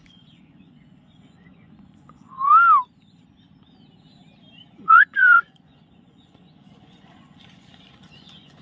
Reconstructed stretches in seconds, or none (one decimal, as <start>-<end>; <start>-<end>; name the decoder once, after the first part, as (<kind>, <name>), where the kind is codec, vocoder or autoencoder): 0.0-2.5 (vocoder, Vocos); 4.7-8.6